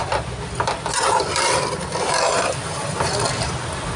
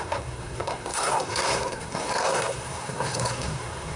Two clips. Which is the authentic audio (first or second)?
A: first